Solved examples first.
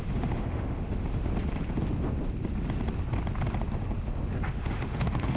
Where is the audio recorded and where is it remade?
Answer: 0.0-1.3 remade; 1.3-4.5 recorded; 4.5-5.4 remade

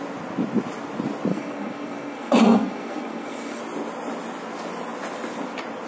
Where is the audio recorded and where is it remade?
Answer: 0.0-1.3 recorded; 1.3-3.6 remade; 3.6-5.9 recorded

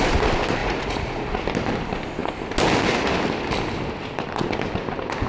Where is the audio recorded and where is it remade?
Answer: 0.0-0.6 recorded; 0.6-1.4 remade; 1.4-5.3 recorded